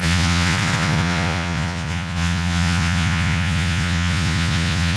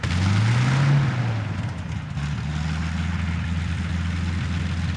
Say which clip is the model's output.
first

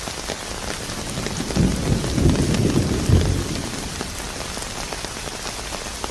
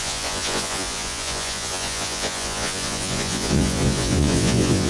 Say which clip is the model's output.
second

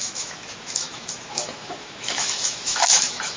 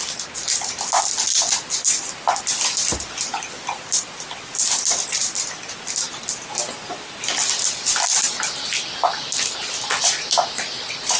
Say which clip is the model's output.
first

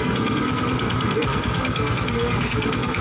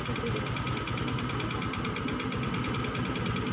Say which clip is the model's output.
first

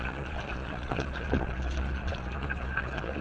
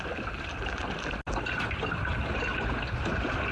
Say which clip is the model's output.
first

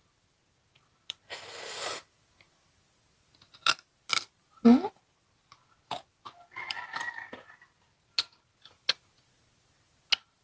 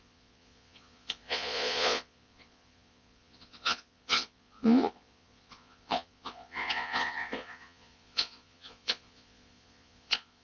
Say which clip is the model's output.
second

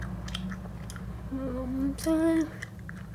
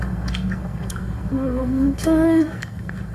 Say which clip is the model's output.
second